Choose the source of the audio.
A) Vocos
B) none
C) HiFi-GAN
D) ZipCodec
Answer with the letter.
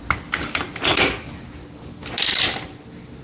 B